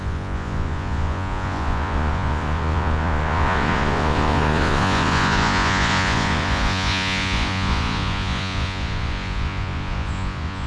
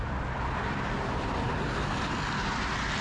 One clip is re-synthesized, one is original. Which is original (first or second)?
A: second